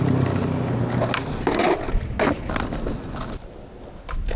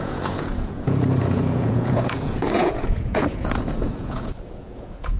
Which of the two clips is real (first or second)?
first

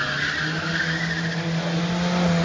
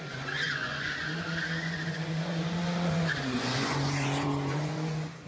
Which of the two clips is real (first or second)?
first